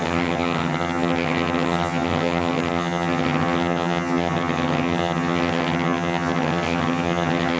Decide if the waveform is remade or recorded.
remade